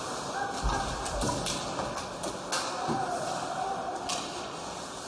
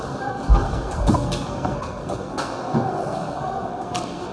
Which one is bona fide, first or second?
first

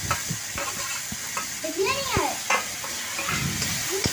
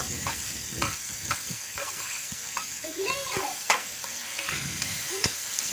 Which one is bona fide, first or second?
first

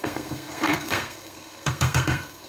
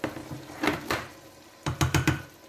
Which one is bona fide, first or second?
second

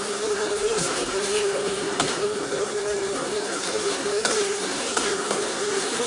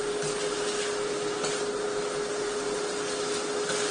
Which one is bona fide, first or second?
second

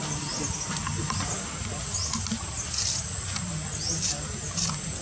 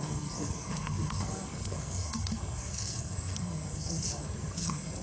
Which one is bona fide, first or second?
first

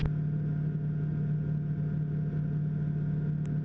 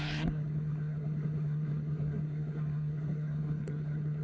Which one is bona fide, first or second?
first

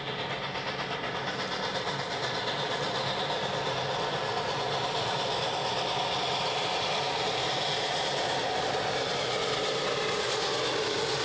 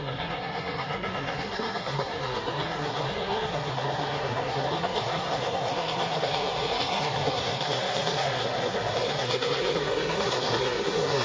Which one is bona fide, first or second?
first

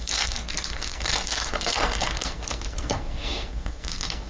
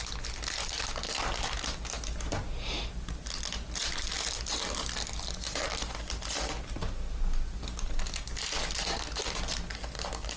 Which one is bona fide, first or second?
second